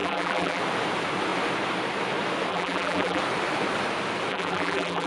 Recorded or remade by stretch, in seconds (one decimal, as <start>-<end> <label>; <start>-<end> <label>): 0.0-0.6 remade; 0.6-2.5 recorded; 2.5-3.2 remade; 3.2-4.3 recorded; 4.3-5.1 remade

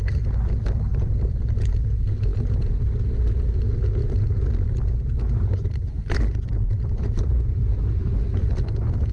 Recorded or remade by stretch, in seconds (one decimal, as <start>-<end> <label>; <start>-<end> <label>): 0.0-0.9 recorded; 0.9-1.8 remade; 1.8-4.0 recorded; 4.0-7.8 remade; 7.8-9.1 recorded

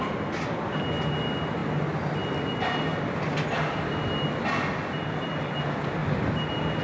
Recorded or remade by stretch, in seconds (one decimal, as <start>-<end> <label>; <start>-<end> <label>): 0.0-6.8 recorded

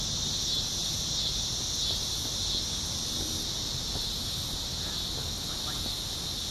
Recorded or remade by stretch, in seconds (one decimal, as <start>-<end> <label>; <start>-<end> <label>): 0.0-6.5 recorded

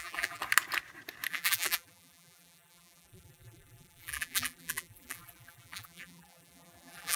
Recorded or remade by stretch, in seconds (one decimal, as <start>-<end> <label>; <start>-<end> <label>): 0.0-0.4 remade; 0.4-1.3 recorded; 1.3-7.1 remade

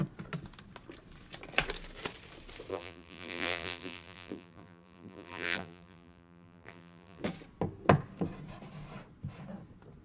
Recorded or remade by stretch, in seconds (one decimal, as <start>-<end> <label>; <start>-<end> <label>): 0.0-2.7 recorded; 2.7-7.2 remade; 7.2-10.0 recorded